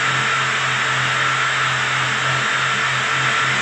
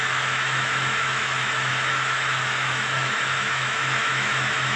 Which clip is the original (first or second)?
first